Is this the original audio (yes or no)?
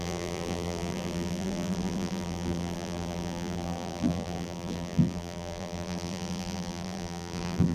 no